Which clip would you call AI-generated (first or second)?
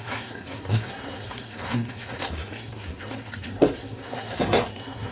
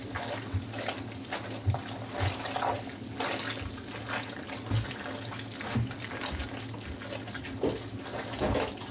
first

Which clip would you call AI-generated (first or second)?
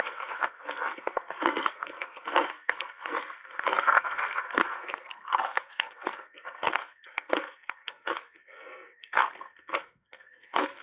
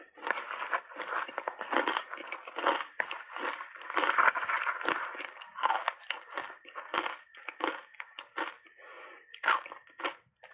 first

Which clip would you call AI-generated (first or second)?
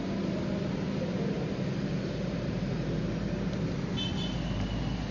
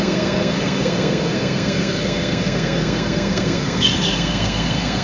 second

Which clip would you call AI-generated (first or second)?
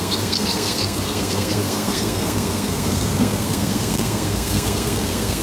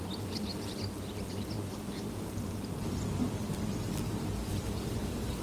first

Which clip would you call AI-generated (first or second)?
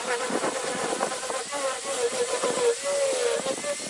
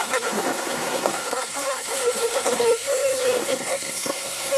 second